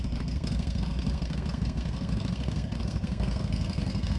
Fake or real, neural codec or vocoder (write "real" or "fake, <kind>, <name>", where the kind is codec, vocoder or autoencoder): fake, codec, SNAC